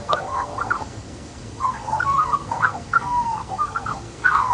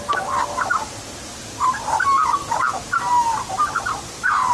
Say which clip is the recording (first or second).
second